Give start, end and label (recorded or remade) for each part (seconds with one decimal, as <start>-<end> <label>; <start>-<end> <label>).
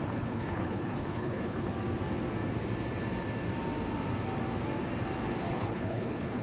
0.0-1.7 remade; 1.7-5.5 recorded; 5.5-6.4 remade